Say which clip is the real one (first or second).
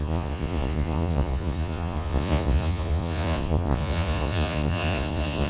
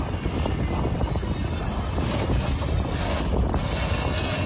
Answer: second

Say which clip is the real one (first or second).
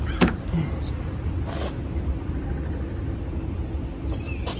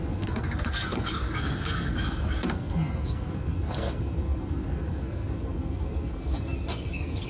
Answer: first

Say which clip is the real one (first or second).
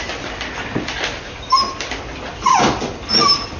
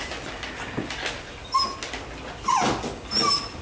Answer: second